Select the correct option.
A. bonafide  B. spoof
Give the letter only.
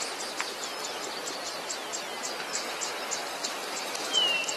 A